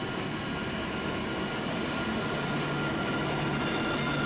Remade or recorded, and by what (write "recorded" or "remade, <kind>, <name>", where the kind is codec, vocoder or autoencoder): recorded